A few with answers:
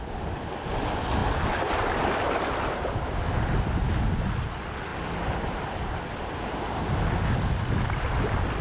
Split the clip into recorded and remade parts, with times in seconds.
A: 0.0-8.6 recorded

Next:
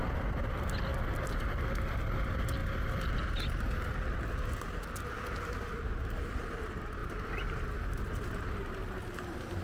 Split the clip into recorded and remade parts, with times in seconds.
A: 0.0-7.0 recorded; 7.0-9.6 remade

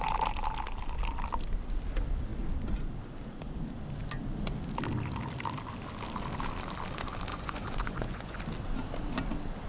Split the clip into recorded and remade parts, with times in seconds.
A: 0.0-7.3 recorded; 7.3-8.4 remade; 8.4-9.7 recorded

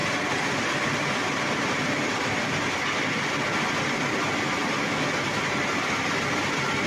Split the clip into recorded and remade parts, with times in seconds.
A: 0.0-6.9 recorded

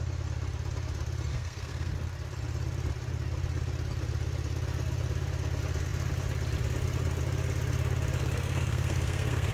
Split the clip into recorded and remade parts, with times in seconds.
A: 0.0-1.3 recorded; 1.3-1.9 remade; 1.9-8.2 recorded; 8.2-9.5 remade

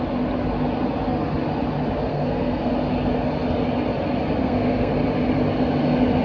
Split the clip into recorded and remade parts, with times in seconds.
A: 0.0-2.1 recorded; 2.1-2.7 remade; 2.7-4.4 recorded; 4.4-4.9 remade; 4.9-6.2 recorded

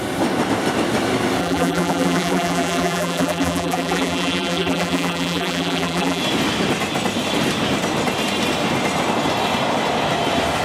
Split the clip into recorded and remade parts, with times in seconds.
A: 0.0-1.4 recorded; 1.4-6.2 remade; 6.2-10.6 recorded

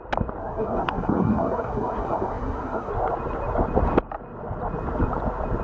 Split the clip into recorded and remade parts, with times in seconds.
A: 0.0-0.4 recorded; 0.4-2.9 remade; 2.9-5.6 recorded